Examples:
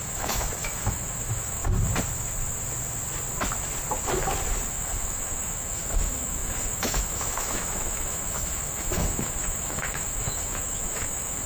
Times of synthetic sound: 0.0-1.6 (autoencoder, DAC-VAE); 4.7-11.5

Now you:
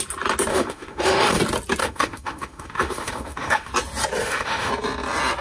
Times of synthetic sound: 0.5-1.4 (autoencoder, DAC-VAE); 1.8-3.7; 4.2-4.7